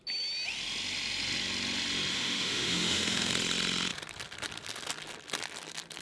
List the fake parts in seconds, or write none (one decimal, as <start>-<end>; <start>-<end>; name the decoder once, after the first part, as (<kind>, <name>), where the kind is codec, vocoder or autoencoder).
2.1-3.3 (autoencoder, DAC-VAE)